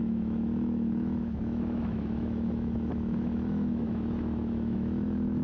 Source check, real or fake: fake